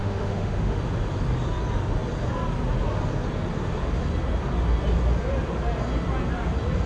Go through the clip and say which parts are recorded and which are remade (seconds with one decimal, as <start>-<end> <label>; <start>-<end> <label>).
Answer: 0.0-0.8 remade; 0.8-6.9 recorded